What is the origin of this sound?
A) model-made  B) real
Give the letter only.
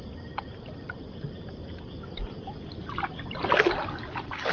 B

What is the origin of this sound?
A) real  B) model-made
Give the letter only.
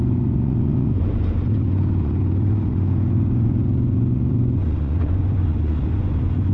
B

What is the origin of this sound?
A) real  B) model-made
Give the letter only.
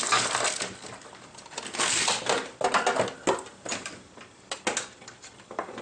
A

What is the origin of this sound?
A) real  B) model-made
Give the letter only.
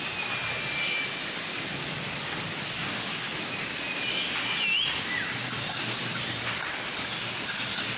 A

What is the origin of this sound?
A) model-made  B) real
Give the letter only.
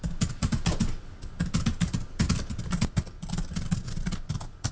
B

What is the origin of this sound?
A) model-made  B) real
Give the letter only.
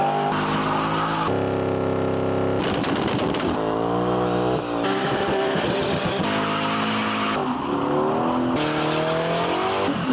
B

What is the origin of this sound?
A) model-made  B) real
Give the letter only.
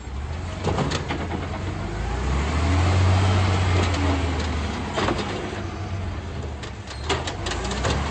B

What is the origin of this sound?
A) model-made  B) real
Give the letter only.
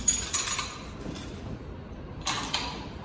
B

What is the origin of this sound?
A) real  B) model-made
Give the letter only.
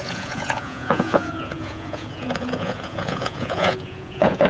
B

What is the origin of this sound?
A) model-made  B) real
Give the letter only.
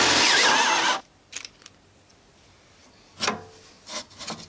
B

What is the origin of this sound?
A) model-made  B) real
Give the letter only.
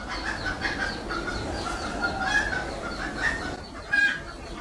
B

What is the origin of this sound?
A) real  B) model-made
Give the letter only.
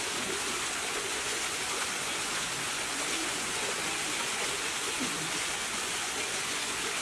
B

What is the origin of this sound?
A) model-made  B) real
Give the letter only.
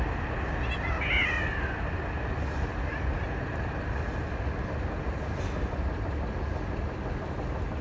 B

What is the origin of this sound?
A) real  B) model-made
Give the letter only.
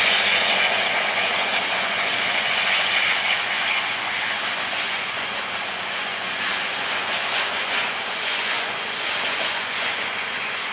B